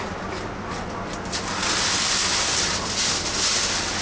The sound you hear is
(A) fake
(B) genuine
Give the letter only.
B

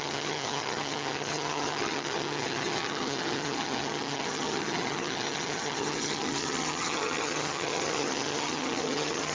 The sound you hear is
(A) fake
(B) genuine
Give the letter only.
A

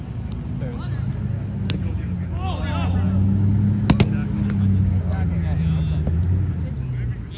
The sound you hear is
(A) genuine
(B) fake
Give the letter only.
A